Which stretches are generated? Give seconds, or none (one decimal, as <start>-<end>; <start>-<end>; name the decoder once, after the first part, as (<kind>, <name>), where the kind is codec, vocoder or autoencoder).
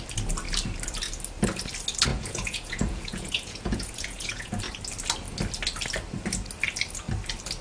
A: 2.1-4.6 (vocoder, Vocos)